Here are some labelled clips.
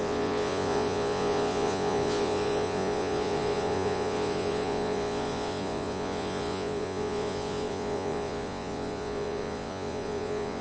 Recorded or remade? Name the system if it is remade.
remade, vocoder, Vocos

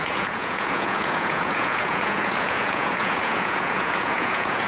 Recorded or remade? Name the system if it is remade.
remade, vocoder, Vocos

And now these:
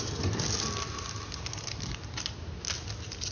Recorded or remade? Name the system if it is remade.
recorded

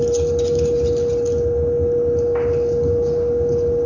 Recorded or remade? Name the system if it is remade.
recorded